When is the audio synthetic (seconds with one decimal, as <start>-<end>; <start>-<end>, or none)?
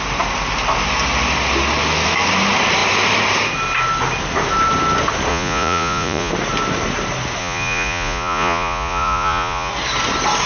5.3-6.3; 7.4-9.7